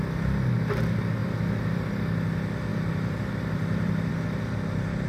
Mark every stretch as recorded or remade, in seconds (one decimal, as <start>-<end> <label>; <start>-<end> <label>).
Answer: 0.0-1.2 recorded; 1.2-1.9 remade; 1.9-2.7 recorded; 2.7-4.1 remade; 4.1-5.1 recorded